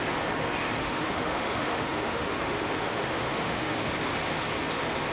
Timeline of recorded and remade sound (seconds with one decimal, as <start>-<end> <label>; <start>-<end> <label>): 0.0-0.8 recorded; 0.8-3.9 remade; 3.9-5.1 recorded